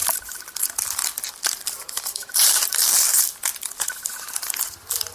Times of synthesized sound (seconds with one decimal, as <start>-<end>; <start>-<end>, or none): 0.0-0.6; 1.0-3.1